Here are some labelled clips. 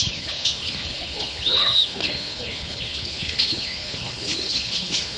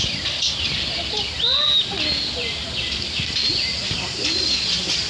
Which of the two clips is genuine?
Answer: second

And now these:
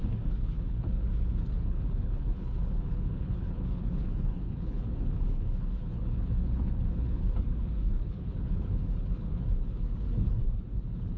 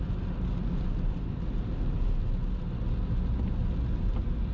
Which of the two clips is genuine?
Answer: second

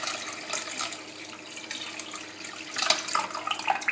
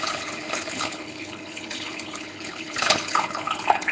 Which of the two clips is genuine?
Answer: first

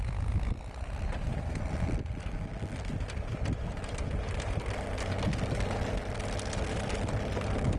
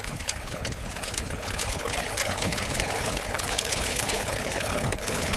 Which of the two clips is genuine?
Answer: first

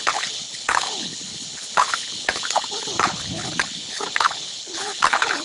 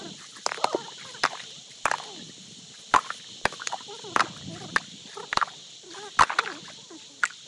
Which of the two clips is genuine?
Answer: second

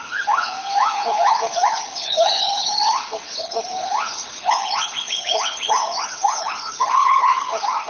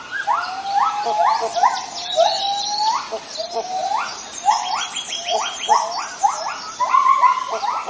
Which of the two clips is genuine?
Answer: second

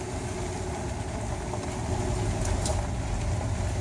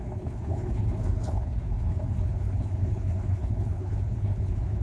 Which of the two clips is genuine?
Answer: first